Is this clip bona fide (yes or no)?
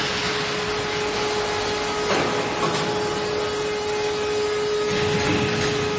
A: yes